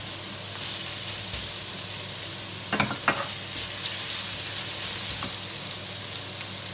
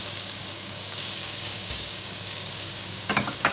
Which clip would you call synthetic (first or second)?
second